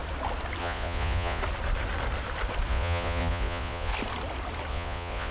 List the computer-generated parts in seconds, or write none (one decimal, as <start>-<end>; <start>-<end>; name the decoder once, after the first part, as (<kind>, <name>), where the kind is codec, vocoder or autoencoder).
0.6-1.4 (vocoder, Vocos); 2.7-3.9; 4.7-5.3